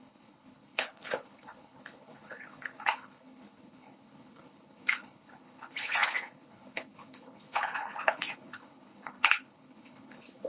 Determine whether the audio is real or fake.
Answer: fake